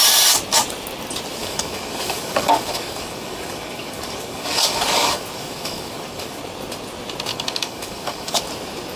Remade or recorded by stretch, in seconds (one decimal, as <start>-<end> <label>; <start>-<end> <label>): 0.0-1.4 recorded; 1.4-6.4 remade; 6.4-7.3 recorded; 7.3-8.4 remade; 8.4-9.0 recorded